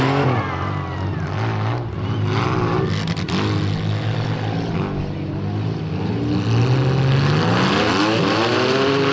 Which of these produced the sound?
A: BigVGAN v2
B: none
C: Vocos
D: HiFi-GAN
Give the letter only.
B